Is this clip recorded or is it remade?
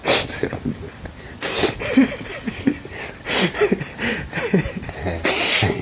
recorded